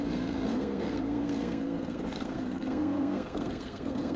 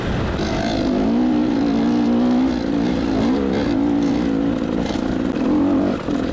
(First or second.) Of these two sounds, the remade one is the first